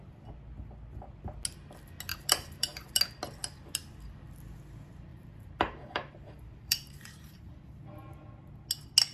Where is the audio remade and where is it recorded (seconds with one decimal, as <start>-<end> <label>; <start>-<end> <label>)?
0.0-2.1 recorded; 2.1-3.0 remade; 3.0-5.1 recorded; 5.1-7.8 remade; 7.8-9.1 recorded